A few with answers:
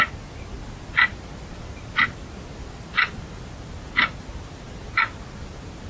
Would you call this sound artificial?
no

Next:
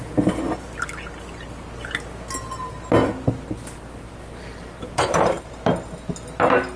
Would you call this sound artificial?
no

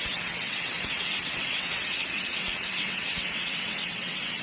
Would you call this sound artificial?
yes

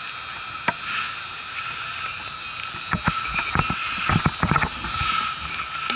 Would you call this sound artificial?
no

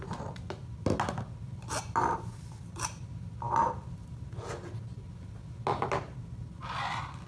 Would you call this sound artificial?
no